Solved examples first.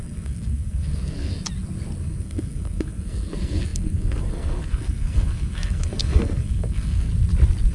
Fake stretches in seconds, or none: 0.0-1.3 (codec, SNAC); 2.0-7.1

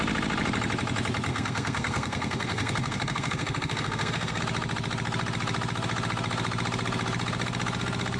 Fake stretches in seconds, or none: 1.3-4.4 (codec, SNAC)

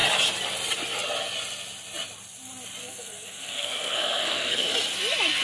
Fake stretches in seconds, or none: 2.8-4.7 (codec, SNAC)

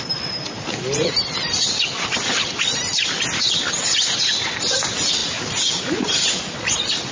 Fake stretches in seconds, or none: none

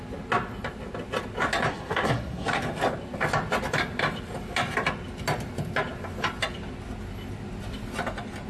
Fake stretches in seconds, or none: 1.7-2.6 (codec, SNAC)